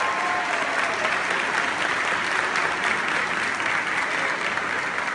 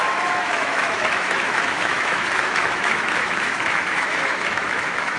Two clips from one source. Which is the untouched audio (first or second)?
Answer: first